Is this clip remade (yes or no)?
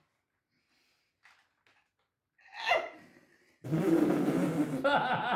no